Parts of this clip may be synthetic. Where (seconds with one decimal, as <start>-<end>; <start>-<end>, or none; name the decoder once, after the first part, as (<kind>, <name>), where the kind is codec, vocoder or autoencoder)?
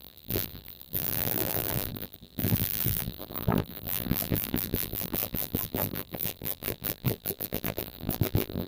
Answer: 0.0-8.7 (vocoder, BigVGAN v2)